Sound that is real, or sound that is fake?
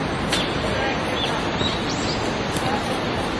real